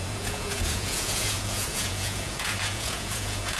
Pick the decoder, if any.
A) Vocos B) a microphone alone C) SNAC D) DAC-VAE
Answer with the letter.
A